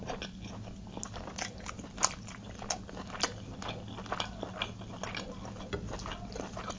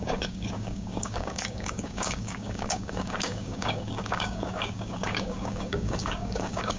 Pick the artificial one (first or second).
second